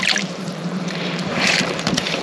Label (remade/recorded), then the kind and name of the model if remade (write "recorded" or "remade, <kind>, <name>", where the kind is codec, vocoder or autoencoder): remade, vocoder, BigVGAN v2